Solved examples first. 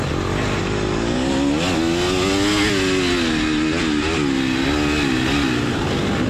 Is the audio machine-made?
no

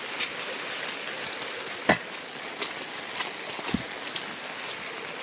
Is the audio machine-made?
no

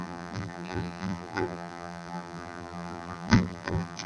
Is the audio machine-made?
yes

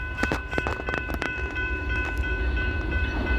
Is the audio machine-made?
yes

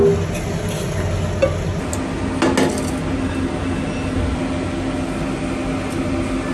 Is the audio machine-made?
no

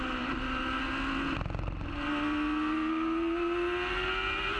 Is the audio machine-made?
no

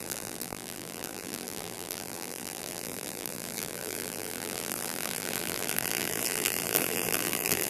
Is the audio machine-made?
yes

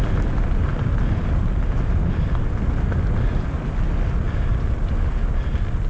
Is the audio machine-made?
no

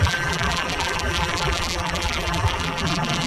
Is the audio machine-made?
yes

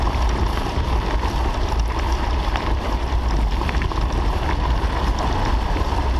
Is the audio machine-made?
yes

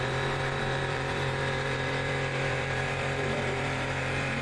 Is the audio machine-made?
yes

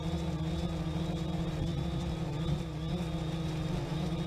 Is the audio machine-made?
no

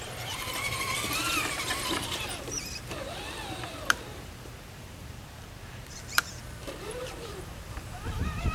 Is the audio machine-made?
yes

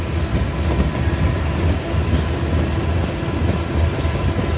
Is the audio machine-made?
no